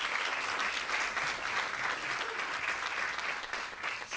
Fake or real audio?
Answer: real